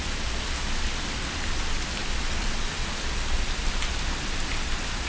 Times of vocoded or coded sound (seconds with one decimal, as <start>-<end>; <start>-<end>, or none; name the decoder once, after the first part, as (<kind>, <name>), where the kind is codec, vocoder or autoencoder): none